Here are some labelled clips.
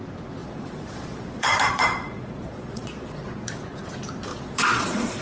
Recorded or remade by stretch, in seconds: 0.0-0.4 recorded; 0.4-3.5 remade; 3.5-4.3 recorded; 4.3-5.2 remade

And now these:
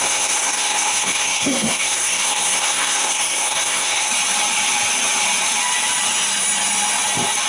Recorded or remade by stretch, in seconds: 0.0-4.1 remade; 4.1-7.5 recorded

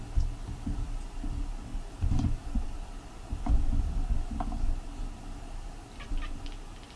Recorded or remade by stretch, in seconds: 0.0-0.4 recorded; 0.4-1.0 remade; 1.0-1.7 recorded; 1.7-3.8 remade; 3.8-7.0 recorded

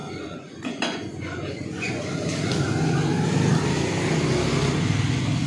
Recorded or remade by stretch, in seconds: 0.0-2.0 remade; 2.0-5.5 recorded

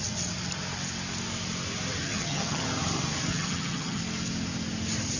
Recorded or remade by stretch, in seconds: 0.0-2.0 recorded; 2.0-2.6 remade; 2.6-3.3 recorded; 3.3-4.0 remade; 4.0-5.2 recorded

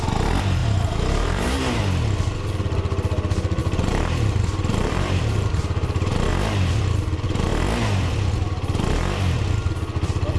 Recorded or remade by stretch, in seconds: 0.0-0.6 recorded; 0.6-1.8 remade; 1.8-3.6 recorded; 3.6-6.3 remade; 6.3-10.4 recorded

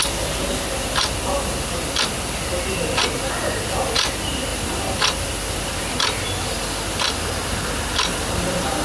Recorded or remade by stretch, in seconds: 0.0-4.5 recorded; 4.5-7.3 remade; 7.3-8.8 recorded

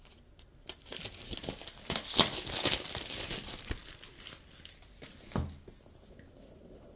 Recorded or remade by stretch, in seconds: 0.0-7.0 recorded